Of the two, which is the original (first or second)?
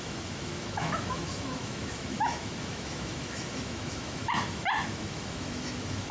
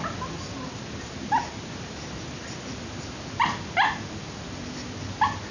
second